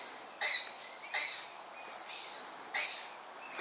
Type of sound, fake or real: real